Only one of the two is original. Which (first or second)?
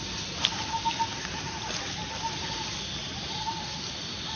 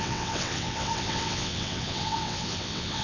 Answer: first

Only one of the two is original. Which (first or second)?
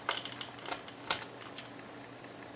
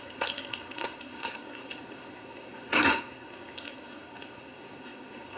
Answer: first